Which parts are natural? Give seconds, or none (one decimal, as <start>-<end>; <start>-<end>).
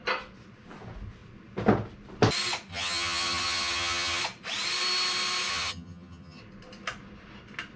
0.0-2.7; 4.2-5.5; 6.4-7.8